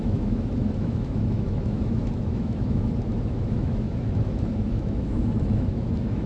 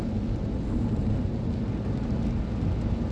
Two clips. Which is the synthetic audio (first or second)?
first